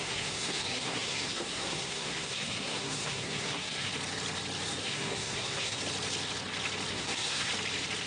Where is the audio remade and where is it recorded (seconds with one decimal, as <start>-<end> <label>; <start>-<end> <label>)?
0.0-3.9 remade; 3.9-4.8 recorded; 4.8-5.8 remade; 5.8-6.9 recorded; 6.9-7.5 remade; 7.5-8.1 recorded